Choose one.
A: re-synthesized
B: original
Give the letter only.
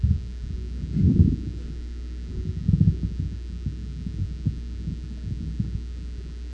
B